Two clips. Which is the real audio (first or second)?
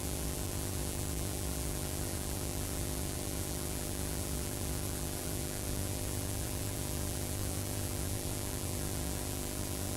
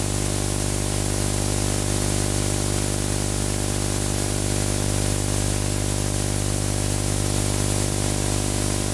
second